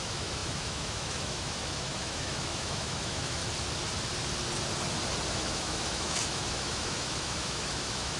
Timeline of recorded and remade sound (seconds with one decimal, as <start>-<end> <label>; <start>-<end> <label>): 0.0-3.4 remade; 3.4-5.3 recorded; 5.3-8.2 remade